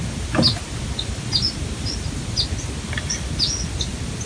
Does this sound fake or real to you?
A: real